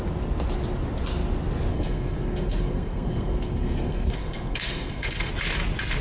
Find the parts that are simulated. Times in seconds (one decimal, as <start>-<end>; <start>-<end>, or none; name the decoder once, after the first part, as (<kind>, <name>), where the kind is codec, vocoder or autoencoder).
1.7-5.3 (codec, SNAC)